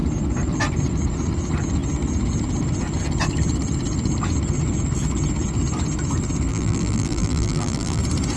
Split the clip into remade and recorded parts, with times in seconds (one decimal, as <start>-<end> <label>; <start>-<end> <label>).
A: 0.0-6.5 recorded; 6.5-8.0 remade; 8.0-8.4 recorded